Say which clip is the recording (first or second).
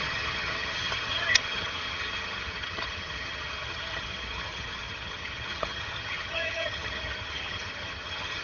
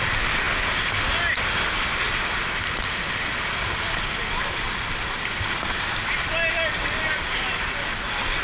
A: second